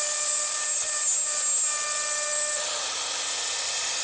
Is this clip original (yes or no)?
yes